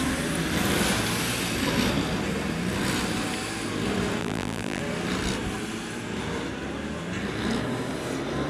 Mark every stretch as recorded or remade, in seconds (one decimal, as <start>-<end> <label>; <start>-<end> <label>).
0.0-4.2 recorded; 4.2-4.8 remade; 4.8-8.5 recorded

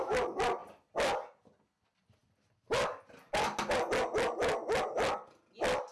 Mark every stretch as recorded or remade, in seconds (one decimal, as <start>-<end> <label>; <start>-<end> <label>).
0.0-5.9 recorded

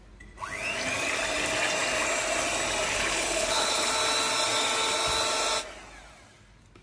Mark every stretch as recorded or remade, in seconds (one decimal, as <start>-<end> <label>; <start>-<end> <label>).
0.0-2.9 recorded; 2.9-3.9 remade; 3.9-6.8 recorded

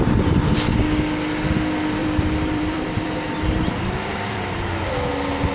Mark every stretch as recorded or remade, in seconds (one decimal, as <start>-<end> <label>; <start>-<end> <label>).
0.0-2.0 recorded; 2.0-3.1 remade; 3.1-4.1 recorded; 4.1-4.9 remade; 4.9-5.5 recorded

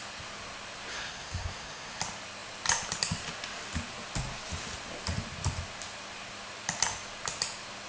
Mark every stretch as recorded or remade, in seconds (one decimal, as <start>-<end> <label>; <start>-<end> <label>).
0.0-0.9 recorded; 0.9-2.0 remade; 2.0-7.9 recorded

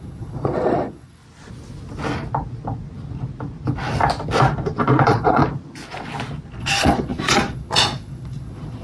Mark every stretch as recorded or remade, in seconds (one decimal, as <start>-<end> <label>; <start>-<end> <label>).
0.0-1.2 remade; 1.2-5.0 recorded; 5.0-5.4 remade; 5.4-6.6 recorded; 6.6-8.8 remade

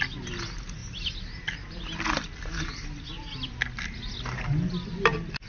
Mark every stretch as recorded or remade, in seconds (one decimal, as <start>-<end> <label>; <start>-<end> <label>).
0.0-5.5 recorded